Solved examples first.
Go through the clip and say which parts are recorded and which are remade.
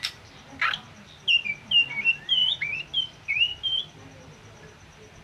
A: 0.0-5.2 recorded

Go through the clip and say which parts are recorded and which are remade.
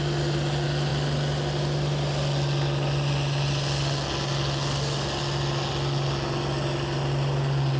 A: 0.0-7.8 recorded